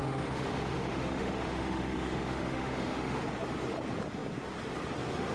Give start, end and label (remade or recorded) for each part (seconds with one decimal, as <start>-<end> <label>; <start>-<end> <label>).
0.0-3.2 remade; 3.2-5.3 recorded